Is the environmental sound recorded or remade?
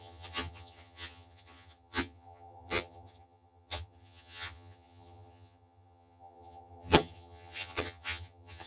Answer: remade